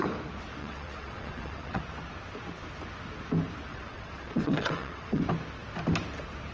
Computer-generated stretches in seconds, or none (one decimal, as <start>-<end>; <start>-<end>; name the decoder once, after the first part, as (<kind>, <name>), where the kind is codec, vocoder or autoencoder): 0.6-1.8 (vocoder, WaveNeXt); 3.7-5.2